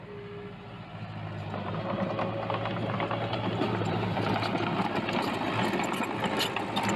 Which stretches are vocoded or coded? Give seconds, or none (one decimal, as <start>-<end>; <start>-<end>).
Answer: 2.8-4.3